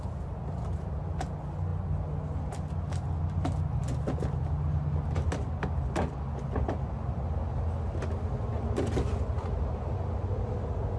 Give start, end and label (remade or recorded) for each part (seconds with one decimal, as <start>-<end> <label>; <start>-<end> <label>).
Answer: 0.0-11.0 recorded